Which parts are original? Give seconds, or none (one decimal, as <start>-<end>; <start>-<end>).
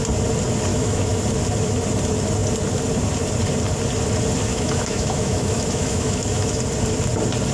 0.0-0.7; 1.2-4.5; 6.6-7.5